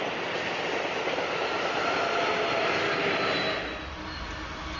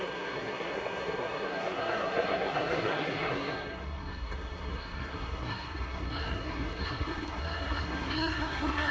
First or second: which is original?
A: first